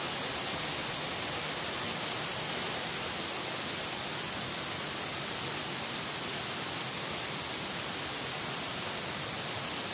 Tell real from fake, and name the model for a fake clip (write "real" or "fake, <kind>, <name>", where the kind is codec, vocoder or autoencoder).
real